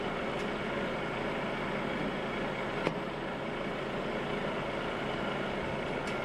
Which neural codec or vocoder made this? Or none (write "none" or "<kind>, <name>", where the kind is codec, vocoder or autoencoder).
none